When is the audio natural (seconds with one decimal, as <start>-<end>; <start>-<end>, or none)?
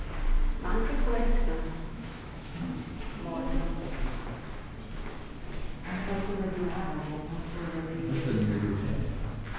0.0-1.1; 4.2-9.6